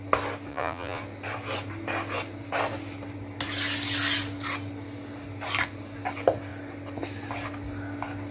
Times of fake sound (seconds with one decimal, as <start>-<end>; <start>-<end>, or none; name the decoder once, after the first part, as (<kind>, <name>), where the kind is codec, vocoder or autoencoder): 0.5-1.0 (vocoder, Vocos)